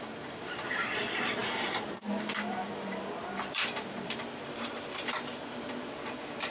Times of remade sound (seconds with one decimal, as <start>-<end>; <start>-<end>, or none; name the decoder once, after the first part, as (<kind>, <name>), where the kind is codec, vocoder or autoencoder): 0.0-6.5 (vocoder, BigVGAN v2)